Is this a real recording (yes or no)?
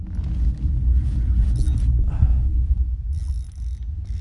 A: yes